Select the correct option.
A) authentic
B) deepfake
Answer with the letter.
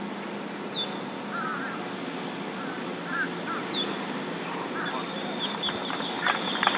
A